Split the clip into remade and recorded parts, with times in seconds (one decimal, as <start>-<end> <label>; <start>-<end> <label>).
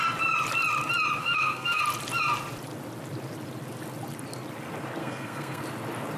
0.0-1.2 recorded; 1.2-1.8 remade; 1.8-5.0 recorded; 5.0-5.6 remade; 5.6-6.2 recorded